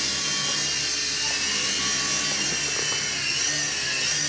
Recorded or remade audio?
recorded